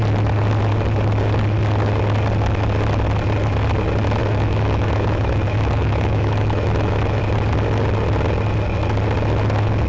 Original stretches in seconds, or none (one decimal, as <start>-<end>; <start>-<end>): 0.0-4.2; 7.2-9.9